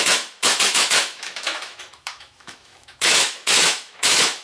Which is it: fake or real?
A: fake